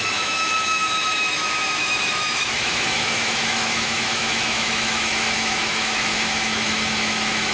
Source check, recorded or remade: remade